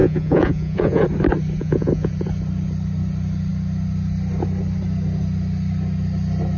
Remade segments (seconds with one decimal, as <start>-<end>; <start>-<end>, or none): 0.0-1.0; 1.6-2.1